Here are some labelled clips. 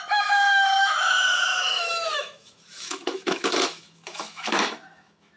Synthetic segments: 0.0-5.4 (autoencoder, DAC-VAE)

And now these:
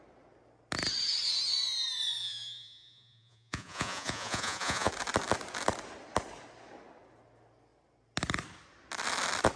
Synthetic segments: 2.2-4.9 (vocoder, Vocos)

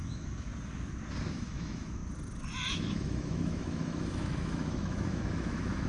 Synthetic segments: 0.0-0.5 (autoencoder, DAC-VAE); 1.3-2.0; 2.7-5.9

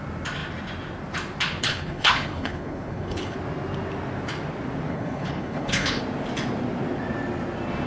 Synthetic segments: 1.6-3.4 (codec, HILCodec); 4.9-6.0